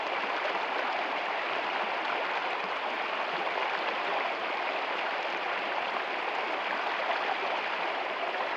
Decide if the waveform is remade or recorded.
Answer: remade